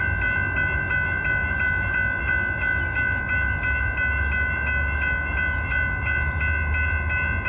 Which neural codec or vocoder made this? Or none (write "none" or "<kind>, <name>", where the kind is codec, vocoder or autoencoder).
none